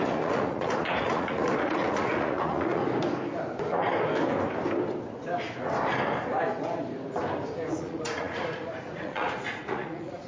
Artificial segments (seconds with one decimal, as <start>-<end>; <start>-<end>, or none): 0.0-2.8; 7.7-10.3